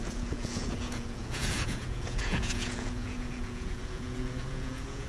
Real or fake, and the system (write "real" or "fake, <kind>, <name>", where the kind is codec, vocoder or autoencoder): fake, vocoder, Vocos